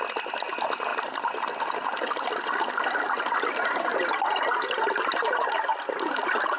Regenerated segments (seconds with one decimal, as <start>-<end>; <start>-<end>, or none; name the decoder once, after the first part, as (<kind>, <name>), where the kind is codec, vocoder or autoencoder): none